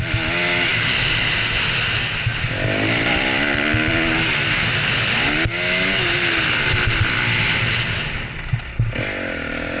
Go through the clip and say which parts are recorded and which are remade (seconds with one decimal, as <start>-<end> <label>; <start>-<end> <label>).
0.0-9.8 recorded